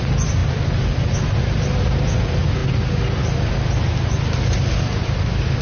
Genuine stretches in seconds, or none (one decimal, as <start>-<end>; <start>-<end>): 0.0-5.6